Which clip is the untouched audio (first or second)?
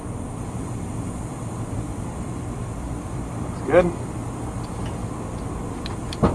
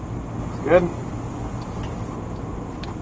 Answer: second